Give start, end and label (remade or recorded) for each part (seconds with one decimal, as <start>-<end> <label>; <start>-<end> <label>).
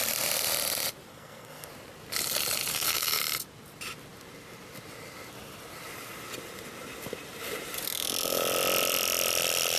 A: 0.0-1.1 recorded; 1.1-1.7 remade; 1.7-2.7 recorded; 2.7-3.2 remade; 3.2-9.8 recorded